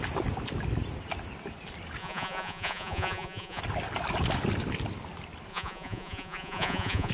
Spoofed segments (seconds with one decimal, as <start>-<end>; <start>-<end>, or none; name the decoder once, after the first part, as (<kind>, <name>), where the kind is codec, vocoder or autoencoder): 2.0-3.6 (vocoder, Vocos); 5.5-7.1

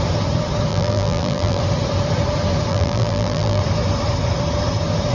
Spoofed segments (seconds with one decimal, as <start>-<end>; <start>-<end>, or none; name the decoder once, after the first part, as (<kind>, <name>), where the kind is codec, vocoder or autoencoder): 0.7-1.6 (vocoder, BigVGAN v2); 2.7-3.6

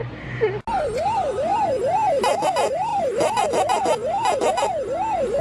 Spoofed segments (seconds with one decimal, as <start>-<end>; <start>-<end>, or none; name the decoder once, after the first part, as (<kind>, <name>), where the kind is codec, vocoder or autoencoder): none

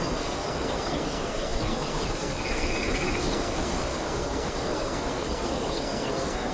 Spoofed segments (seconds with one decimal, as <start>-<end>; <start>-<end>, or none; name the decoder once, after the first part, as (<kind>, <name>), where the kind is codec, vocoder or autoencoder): 0.0-6.5 (codec, SNAC)

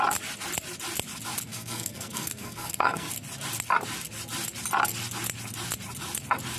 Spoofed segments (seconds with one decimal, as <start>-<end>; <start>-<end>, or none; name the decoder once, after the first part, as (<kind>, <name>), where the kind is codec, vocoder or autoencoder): 1.5-3.1 (codec, SNAC)